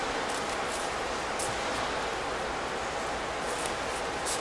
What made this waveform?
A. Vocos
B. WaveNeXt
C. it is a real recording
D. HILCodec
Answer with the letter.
C